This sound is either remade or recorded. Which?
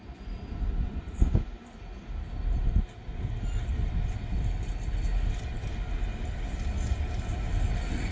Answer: recorded